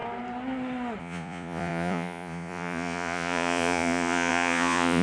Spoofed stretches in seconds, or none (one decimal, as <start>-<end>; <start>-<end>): 1.0-5.0